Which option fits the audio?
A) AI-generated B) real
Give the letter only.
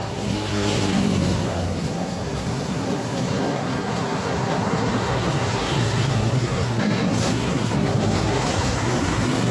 A